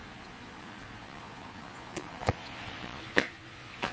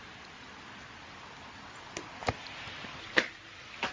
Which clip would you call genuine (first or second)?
second